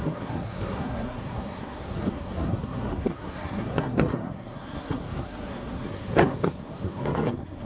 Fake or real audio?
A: fake